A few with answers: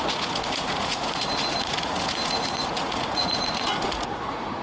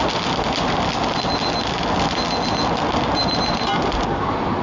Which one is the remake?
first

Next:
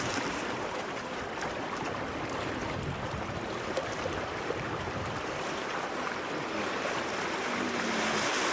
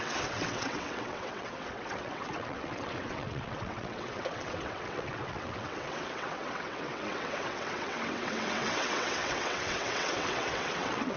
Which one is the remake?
second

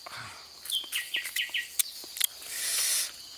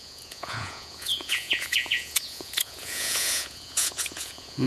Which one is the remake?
second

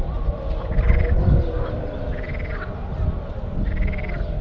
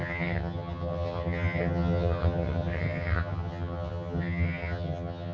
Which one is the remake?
second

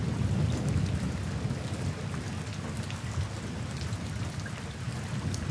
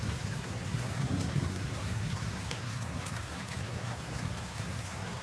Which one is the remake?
second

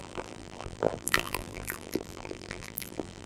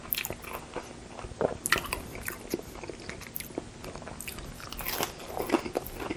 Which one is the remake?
first